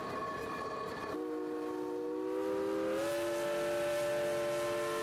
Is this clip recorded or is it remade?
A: recorded